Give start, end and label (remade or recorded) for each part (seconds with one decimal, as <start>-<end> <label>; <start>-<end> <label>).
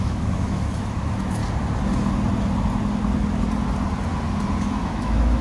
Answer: 0.0-1.4 remade; 1.4-4.6 recorded; 4.6-5.4 remade